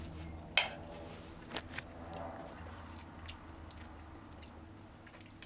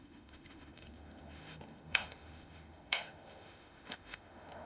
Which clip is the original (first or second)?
first